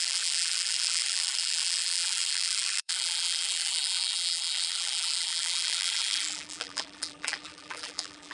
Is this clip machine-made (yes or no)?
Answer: yes